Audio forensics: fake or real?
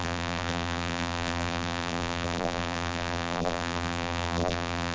fake